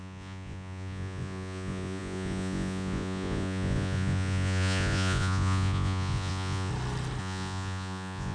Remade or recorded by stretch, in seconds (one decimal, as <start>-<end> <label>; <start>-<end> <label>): 0.0-6.7 remade; 6.7-7.2 recorded; 7.2-8.3 remade